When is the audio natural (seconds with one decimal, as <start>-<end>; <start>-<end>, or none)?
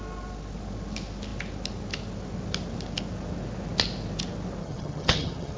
0.0-4.6